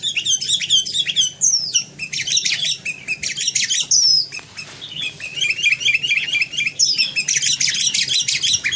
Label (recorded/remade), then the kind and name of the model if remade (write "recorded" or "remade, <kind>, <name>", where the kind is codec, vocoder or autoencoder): recorded